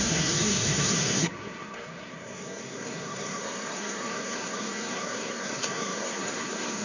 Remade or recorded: remade